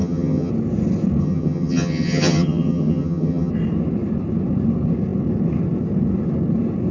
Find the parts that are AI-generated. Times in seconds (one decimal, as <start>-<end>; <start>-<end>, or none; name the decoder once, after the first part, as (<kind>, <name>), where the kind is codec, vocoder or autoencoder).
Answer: 0.0-0.5 (vocoder, HiFi-GAN); 1.2-3.5